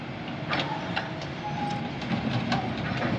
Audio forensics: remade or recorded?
recorded